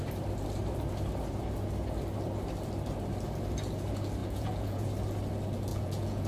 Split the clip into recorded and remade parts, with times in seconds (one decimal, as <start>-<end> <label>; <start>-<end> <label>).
0.0-4.2 recorded; 4.2-4.9 remade; 4.9-5.7 recorded; 5.7-6.3 remade